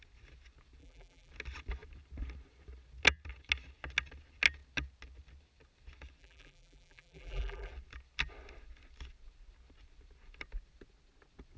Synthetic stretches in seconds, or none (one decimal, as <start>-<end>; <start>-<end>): 0.8-1.3; 6.2-7.7